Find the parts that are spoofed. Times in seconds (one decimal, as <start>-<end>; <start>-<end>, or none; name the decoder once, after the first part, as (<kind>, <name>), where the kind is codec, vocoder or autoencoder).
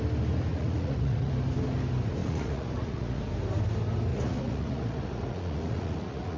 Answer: 0.5-1.3 (vocoder, Vocos); 2.2-3.2; 4.1-6.4